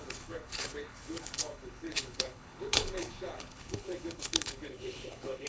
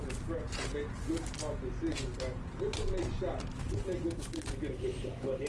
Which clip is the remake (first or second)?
first